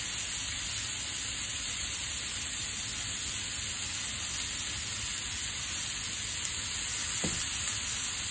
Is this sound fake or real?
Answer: real